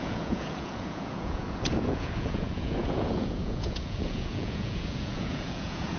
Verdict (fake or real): fake